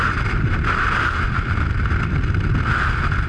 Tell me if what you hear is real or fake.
real